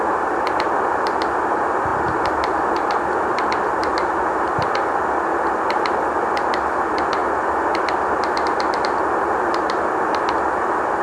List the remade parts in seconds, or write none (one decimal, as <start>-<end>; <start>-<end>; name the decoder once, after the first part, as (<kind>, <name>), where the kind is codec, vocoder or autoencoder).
none